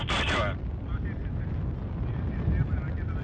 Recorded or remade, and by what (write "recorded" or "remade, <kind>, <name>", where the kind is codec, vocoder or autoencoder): recorded